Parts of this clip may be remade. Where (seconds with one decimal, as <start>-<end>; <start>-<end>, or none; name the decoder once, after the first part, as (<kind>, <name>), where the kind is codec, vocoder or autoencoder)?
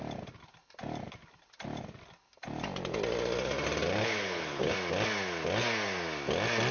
4.0-4.7 (codec, HILCodec)